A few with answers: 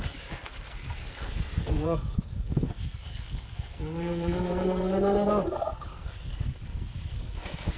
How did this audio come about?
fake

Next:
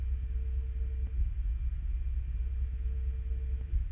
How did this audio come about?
real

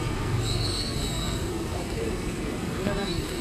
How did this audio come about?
fake